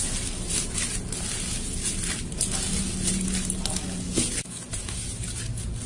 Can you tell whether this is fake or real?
real